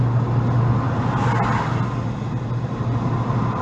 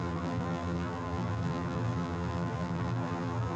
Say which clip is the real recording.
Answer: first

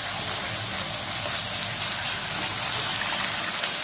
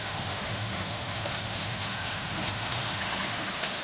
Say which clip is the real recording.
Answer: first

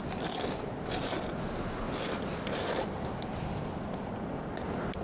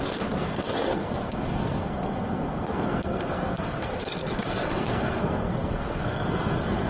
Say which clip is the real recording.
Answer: first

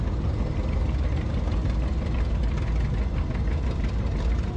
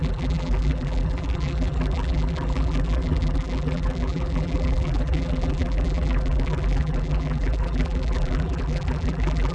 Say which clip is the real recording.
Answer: first